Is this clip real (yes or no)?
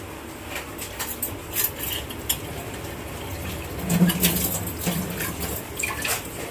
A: yes